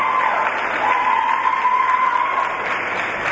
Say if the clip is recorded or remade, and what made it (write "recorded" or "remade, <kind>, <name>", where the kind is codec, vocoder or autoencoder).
recorded